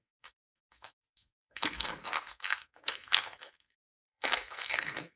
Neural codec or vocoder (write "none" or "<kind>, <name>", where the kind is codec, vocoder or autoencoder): codec, SNAC